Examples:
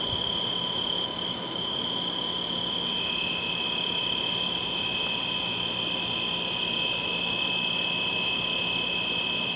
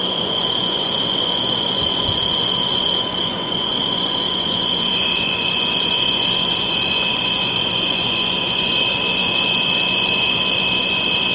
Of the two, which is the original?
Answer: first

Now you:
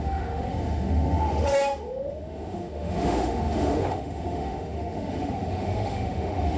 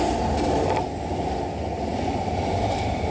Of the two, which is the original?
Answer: second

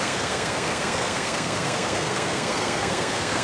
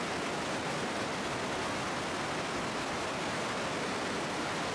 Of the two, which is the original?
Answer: second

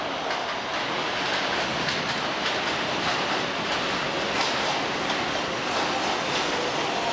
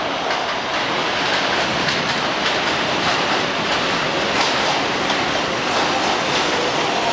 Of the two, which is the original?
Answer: first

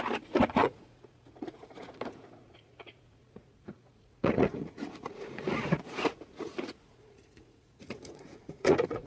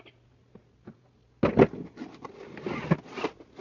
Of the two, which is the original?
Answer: second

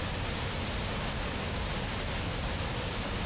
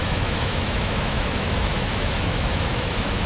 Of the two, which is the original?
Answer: first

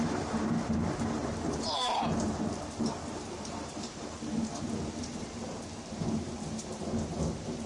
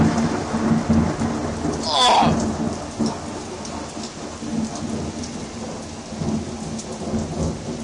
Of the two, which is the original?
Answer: second